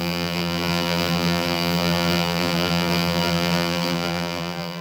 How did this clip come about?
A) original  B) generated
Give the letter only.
B